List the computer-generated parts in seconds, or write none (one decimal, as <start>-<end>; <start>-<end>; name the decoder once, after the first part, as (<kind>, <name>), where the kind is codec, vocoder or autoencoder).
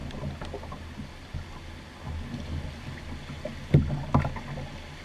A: none